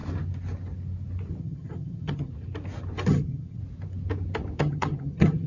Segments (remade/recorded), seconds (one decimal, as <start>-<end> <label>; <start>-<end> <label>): 0.0-1.4 recorded; 1.4-2.3 remade; 2.3-3.1 recorded; 3.1-3.6 remade; 3.6-4.6 recorded; 4.6-5.5 remade